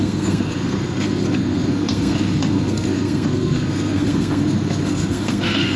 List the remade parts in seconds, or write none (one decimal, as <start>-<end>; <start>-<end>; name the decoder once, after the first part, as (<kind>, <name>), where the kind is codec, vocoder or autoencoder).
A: 0.0-5.8 (codec, SNAC)